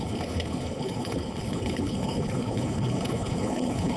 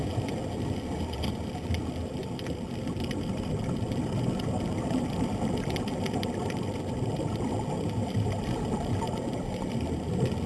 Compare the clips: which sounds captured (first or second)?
second